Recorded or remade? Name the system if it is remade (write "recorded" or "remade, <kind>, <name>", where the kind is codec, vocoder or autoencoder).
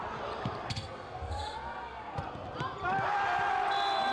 recorded